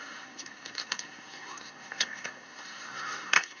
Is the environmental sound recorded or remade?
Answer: remade